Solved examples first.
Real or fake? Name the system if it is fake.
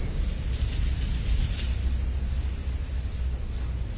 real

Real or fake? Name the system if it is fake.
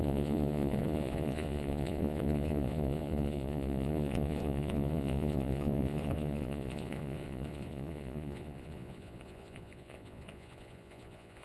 fake, vocoder, Vocos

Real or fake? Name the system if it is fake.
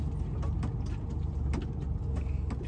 real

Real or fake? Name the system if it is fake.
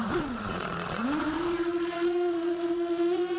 fake, vocoder, Vocos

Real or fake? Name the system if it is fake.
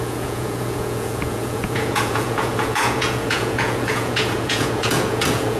fake, vocoder, Vocos